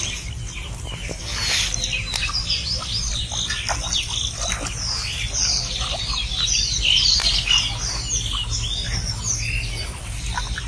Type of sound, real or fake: real